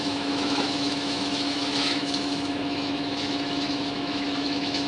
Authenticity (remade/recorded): remade